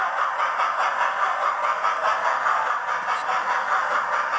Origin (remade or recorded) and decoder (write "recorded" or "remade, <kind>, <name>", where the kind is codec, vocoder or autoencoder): recorded